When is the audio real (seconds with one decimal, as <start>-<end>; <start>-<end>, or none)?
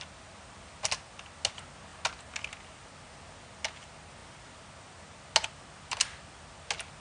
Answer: 0.0-7.0